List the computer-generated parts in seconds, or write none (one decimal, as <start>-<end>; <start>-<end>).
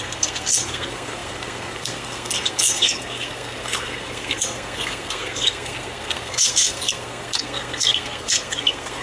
0.0-9.0